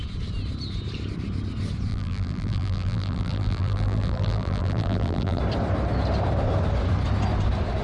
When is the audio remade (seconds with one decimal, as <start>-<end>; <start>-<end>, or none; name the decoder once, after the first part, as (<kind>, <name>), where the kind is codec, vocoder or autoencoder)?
1.9-5.4 (vocoder, BigVGAN v2)